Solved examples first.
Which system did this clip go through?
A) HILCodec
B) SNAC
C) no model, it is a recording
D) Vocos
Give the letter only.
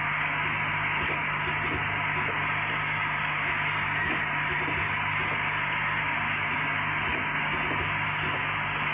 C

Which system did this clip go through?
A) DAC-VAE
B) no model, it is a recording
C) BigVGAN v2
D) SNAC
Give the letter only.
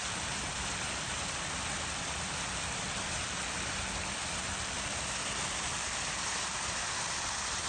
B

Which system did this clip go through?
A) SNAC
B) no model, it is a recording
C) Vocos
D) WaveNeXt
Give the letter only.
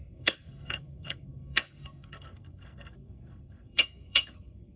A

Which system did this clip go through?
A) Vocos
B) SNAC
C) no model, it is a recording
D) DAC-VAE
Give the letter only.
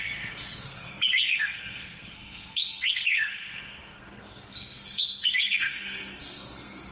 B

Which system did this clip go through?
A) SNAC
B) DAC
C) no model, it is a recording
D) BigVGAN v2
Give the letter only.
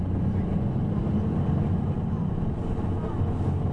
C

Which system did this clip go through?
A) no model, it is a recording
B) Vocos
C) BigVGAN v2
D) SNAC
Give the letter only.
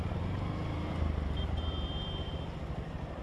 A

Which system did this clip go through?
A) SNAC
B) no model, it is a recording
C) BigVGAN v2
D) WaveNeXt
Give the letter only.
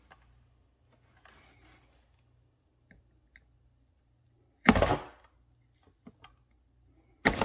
B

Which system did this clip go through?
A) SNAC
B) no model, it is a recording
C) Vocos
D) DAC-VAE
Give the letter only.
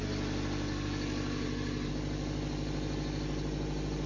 B